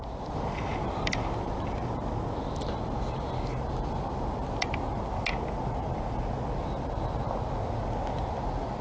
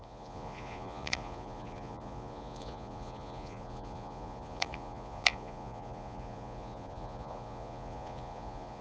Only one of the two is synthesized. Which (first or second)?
second